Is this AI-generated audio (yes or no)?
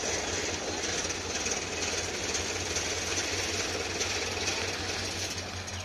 no